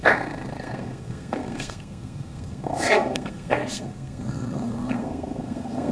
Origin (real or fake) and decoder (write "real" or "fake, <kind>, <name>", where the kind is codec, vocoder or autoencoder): fake, codec, SNAC